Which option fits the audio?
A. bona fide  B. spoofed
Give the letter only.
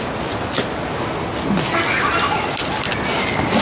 A